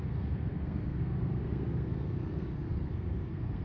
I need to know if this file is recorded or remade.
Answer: remade